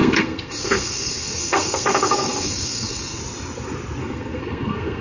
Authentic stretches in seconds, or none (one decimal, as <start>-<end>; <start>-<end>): 3.2-4.0